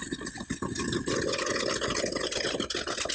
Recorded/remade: recorded